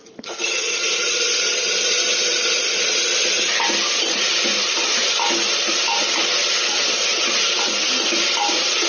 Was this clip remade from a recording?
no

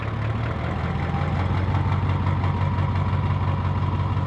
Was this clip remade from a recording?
no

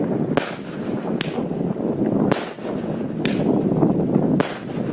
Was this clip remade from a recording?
no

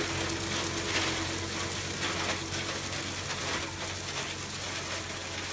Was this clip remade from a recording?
no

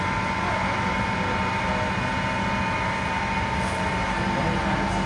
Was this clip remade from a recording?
no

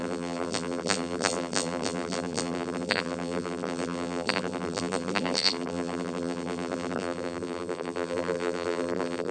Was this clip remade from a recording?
yes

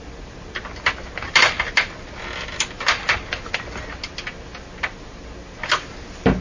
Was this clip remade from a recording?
no